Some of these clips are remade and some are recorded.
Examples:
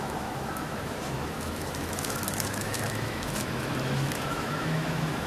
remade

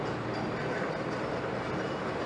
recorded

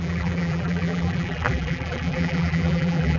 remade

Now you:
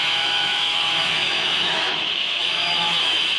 remade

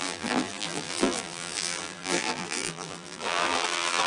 remade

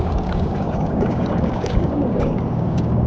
remade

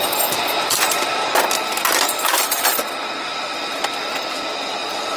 recorded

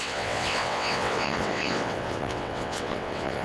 remade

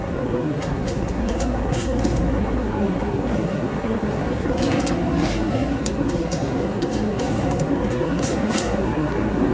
remade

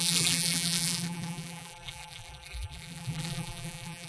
remade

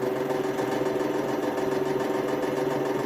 recorded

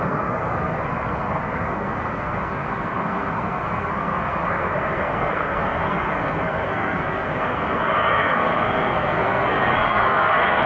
remade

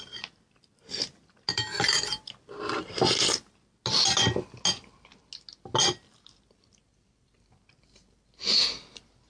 recorded